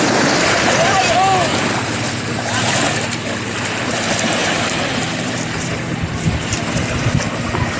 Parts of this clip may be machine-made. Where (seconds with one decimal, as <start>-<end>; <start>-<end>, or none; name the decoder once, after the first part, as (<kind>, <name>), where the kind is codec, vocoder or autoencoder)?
1.5-2.6 (vocoder, BigVGAN v2); 4.4-6.6

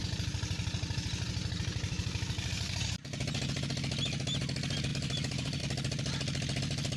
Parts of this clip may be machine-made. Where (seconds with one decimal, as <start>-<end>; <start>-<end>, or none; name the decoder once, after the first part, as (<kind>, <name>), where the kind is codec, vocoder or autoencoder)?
4.9-5.6 (vocoder, BigVGAN v2)

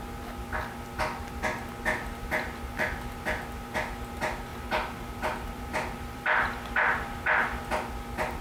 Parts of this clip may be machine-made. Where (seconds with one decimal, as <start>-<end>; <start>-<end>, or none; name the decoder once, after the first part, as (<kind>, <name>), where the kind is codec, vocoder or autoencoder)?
4.5-7.6 (vocoder, BigVGAN v2)